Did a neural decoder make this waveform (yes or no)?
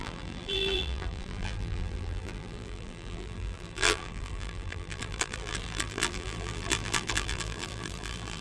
yes